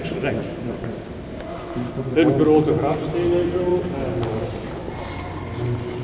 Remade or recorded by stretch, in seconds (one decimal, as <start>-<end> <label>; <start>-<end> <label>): 0.0-6.0 recorded